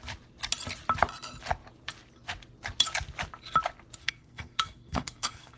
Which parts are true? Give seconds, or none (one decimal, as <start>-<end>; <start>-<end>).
0.0-4.0